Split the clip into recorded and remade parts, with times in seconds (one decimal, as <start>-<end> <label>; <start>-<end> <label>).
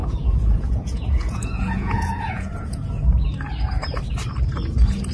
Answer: 0.0-3.1 remade; 3.1-5.1 recorded